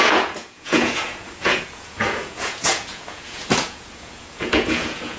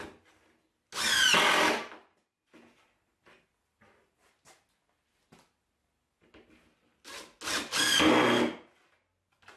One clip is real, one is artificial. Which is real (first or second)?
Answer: second